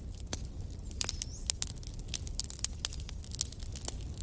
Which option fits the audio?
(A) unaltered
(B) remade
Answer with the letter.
A